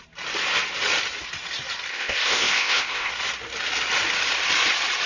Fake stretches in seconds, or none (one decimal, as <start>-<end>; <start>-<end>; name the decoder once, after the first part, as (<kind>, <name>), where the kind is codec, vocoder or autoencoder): 1.9-3.1 (codec, ZipCodec)